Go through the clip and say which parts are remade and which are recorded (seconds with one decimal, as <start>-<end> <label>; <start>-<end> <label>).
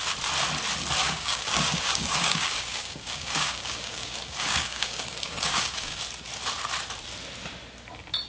0.0-1.0 recorded; 1.0-6.0 remade; 6.0-8.3 recorded